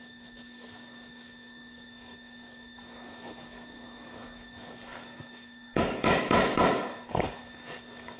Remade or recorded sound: remade